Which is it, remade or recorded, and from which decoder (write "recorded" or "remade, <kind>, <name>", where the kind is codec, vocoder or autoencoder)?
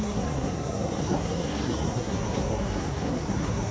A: remade, codec, SNAC